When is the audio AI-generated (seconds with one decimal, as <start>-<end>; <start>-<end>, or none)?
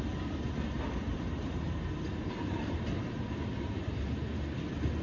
1.1-4.1